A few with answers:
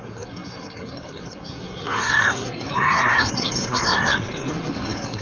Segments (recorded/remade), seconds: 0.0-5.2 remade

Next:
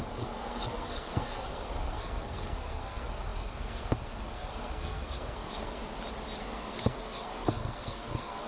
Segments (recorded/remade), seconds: 0.0-5.8 remade; 5.8-6.4 recorded; 6.4-8.5 remade

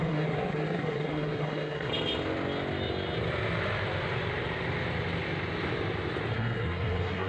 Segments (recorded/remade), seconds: 0.0-1.9 remade; 1.9-6.3 recorded; 6.3-7.3 remade

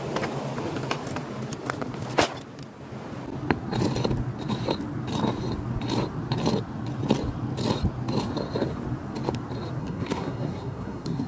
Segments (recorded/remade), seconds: 0.0-9.8 recorded; 9.8-11.3 remade

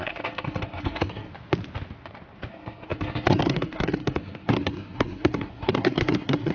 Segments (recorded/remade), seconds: 0.0-1.3 remade; 1.3-2.5 recorded; 2.5-6.5 remade

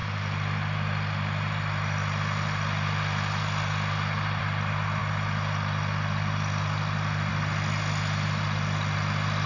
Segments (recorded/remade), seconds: 0.0-9.5 recorded

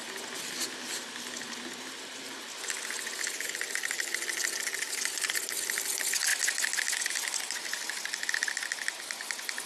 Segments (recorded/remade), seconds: 0.0-9.7 recorded

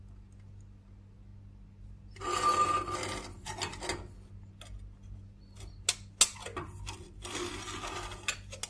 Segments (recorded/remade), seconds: 0.0-8.7 recorded